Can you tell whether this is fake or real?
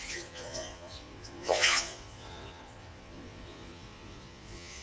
fake